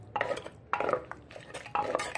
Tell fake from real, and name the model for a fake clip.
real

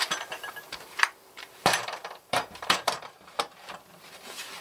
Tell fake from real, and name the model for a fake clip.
fake, vocoder, BigVGAN v2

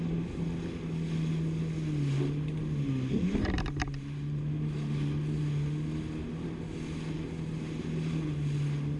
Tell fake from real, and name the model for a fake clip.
real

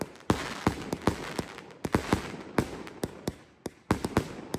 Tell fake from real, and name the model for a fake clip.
real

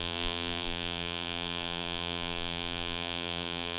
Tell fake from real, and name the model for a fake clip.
fake, vocoder, BigVGAN v2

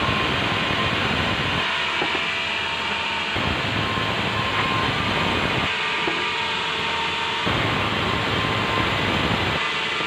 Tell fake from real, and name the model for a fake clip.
real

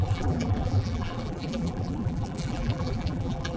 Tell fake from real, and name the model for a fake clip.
fake, vocoder, BigVGAN v2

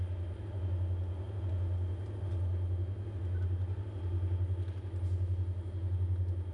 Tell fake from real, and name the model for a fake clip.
real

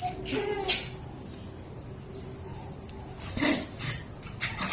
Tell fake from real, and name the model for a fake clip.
real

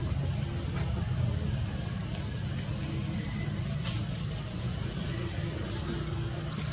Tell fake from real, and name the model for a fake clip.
real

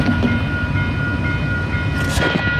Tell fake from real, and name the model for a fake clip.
real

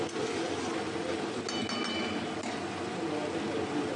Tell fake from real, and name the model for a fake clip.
real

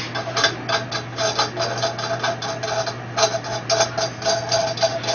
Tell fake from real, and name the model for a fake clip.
real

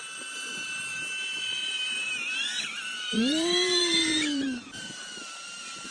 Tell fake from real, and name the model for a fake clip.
fake, vocoder, BigVGAN v2